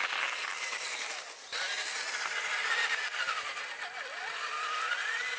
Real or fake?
real